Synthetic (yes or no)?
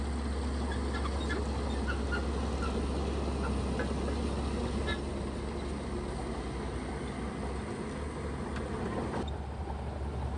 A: no